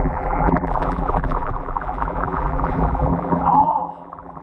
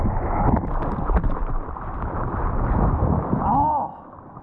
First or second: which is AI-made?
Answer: first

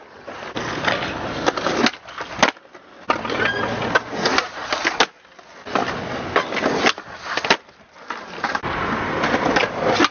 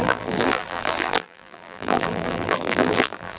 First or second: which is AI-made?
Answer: second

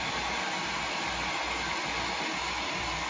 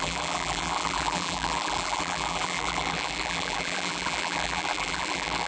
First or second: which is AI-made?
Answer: second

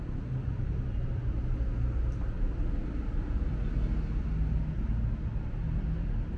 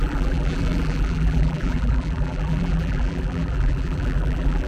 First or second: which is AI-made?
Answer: second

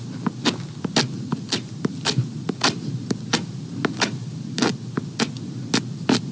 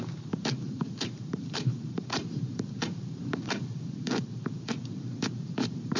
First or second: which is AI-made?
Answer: second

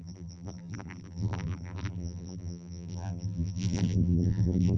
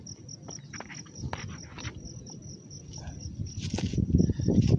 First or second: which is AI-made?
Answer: first